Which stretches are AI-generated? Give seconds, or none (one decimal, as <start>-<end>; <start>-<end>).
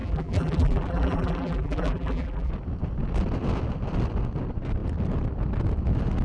0.0-2.5